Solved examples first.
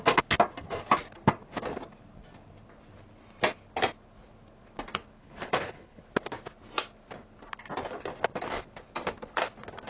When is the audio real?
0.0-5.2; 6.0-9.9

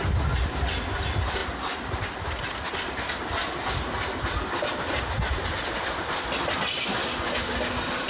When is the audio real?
0.0-8.1

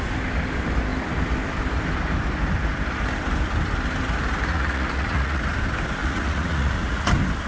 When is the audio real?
0.0-4.5; 5.4-6.0; 7.1-7.5

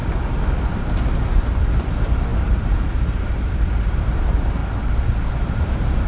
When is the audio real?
0.0-1.8; 4.6-5.3

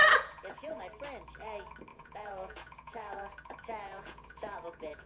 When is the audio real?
0.8-1.9